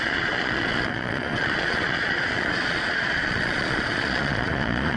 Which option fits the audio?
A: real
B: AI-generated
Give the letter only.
B